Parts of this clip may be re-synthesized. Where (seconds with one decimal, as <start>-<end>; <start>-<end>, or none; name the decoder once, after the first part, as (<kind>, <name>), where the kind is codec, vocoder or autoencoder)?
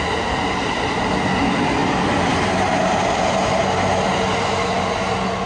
none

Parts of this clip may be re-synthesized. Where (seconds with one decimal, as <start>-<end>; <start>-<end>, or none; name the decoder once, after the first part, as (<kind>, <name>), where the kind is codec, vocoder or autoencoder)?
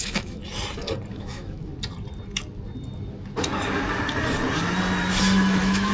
0.0-0.4 (autoencoder, DAC-VAE); 1.1-1.7; 5.2-5.9